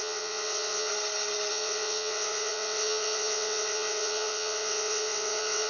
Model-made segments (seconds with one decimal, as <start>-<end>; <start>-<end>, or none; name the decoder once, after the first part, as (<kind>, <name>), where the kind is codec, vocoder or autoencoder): 0.0-0.9 (vocoder, WaveNeXt); 1.5-5.7